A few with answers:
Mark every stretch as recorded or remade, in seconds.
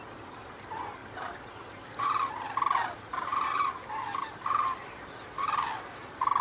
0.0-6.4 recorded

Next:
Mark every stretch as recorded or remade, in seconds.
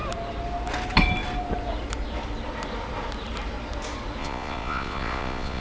0.0-4.2 recorded; 4.2-5.6 remade